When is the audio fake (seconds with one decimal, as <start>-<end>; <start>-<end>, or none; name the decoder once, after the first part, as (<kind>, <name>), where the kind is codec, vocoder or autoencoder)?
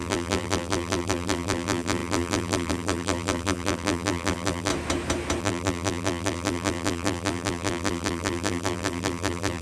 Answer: 0.0-4.7 (vocoder, BigVGAN v2); 5.4-9.6